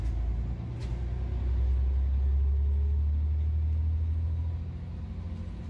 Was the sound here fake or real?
real